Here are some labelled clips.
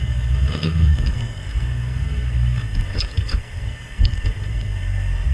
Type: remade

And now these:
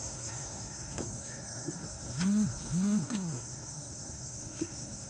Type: remade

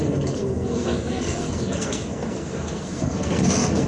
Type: remade